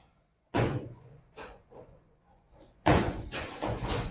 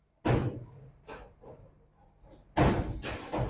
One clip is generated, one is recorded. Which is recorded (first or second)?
second